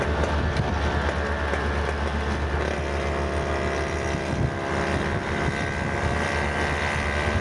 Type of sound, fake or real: real